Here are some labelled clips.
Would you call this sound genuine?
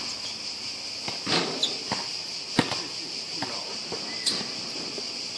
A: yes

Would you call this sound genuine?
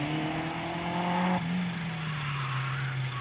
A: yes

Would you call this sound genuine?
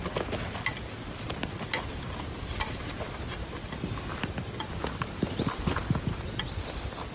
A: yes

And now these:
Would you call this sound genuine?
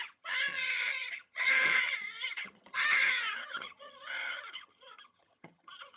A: no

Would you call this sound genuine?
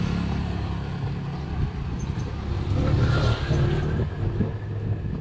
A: yes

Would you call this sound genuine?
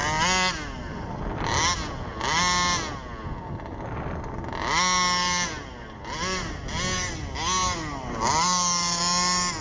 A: yes